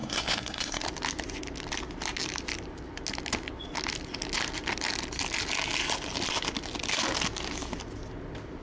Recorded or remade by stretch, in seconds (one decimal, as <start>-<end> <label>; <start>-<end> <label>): 0.0-0.8 remade; 0.8-8.6 recorded